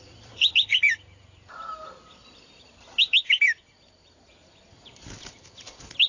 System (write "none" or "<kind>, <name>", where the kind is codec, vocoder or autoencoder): vocoder, BigVGAN v2